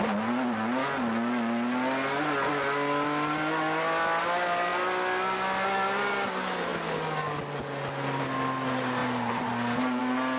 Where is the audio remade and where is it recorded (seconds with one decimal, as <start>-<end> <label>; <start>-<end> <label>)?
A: 0.0-10.4 recorded